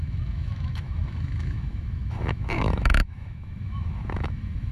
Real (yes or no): no